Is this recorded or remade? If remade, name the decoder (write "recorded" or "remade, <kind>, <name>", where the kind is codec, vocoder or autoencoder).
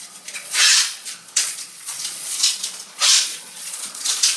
remade, vocoder, Vocos